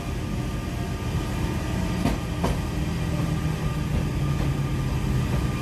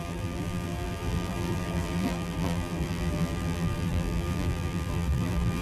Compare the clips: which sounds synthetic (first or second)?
second